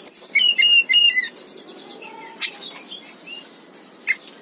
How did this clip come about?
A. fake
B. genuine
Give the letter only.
B